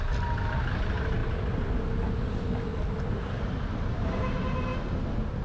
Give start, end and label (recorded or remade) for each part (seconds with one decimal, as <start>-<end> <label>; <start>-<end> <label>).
0.0-5.4 recorded